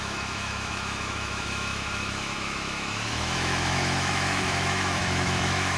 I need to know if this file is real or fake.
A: fake